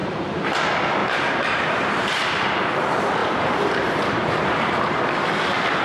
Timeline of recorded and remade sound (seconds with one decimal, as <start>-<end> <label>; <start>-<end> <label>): 0.0-0.6 remade; 0.6-1.0 recorded; 1.0-2.7 remade; 2.7-3.2 recorded; 3.2-4.3 remade; 4.3-5.8 recorded